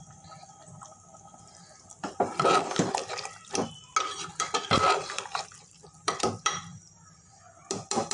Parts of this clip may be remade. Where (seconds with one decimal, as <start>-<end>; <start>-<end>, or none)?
0.0-3.0; 4.3-8.1